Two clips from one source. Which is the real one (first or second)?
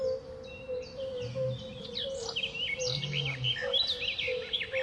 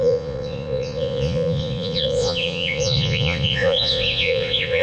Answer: first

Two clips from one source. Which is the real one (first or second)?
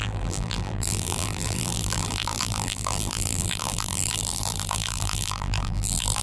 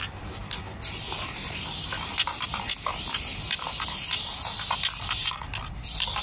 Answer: second